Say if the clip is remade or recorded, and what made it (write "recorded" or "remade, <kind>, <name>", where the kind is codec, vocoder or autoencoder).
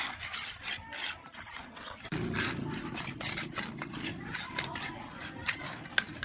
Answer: recorded